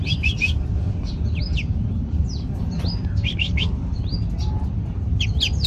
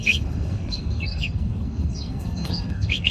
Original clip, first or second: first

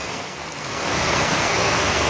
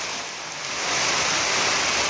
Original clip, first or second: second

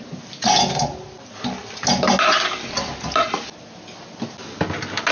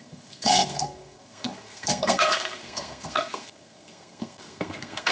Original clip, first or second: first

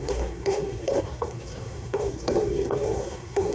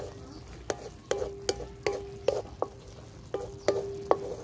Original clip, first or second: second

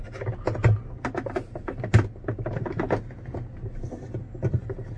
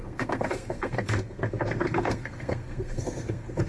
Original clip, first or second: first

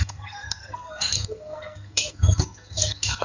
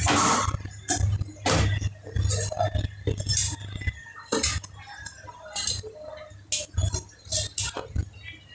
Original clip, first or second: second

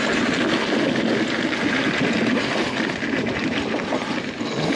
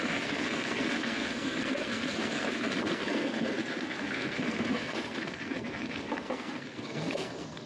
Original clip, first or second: first